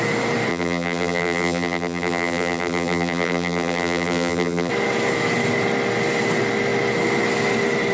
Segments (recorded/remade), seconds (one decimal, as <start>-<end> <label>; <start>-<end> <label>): 0.0-0.5 recorded; 0.5-4.7 remade; 4.7-7.9 recorded